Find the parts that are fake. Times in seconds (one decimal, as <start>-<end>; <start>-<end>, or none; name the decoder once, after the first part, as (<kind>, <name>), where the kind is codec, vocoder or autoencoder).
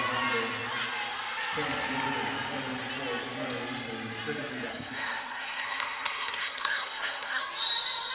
4.7-7.4 (codec, SNAC)